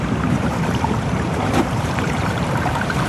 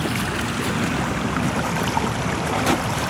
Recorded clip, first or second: second